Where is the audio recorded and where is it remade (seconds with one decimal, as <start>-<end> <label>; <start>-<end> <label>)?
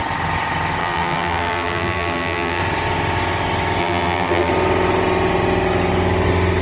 0.0-0.8 recorded; 0.8-2.6 remade; 2.6-3.8 recorded; 3.8-4.5 remade; 4.5-6.6 recorded